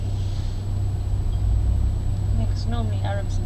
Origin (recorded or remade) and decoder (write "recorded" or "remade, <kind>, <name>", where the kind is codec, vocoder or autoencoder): recorded